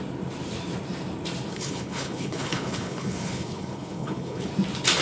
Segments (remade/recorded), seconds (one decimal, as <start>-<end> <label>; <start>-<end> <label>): 0.0-1.5 recorded; 1.5-4.5 remade; 4.5-5.0 recorded